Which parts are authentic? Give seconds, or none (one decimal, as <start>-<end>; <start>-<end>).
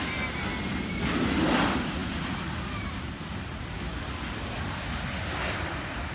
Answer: 0.0-6.1